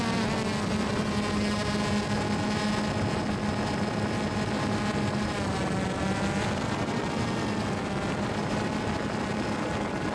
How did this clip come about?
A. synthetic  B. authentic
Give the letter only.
B